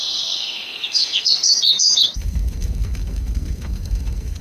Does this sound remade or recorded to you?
remade